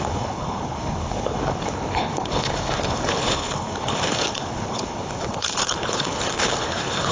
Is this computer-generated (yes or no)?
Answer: yes